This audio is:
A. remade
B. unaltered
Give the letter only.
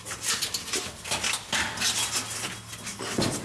B